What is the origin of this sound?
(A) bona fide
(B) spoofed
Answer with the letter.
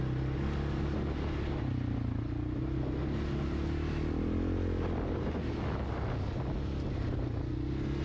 A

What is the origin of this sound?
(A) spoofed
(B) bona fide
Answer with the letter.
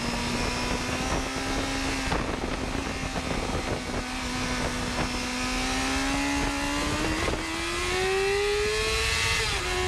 B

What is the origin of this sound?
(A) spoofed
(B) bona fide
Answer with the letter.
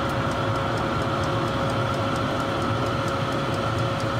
B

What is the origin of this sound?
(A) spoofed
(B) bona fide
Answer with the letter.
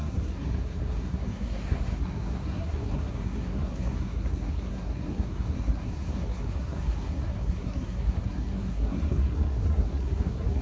A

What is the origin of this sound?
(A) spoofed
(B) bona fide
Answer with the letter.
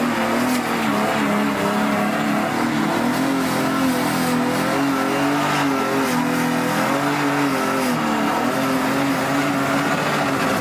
B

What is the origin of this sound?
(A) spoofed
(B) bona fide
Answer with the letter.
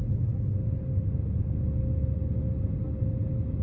B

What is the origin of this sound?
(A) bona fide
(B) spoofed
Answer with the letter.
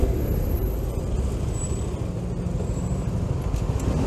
A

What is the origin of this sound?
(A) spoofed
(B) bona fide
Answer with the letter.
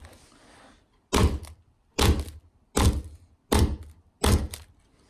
B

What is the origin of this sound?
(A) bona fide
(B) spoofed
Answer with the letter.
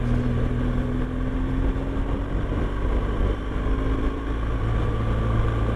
A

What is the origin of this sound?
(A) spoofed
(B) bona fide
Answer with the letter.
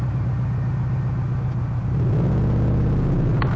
B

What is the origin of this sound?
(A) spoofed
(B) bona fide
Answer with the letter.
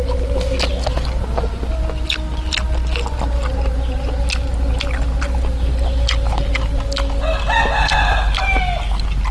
B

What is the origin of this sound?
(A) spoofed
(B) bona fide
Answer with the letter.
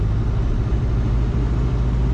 B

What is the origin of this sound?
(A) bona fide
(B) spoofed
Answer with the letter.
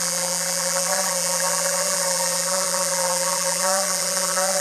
B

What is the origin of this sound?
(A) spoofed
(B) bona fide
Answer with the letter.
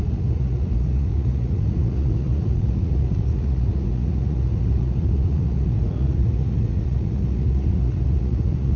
A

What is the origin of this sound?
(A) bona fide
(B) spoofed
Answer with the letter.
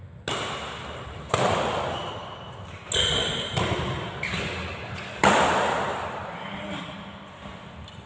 A